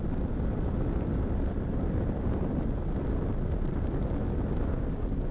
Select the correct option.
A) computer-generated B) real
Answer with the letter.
B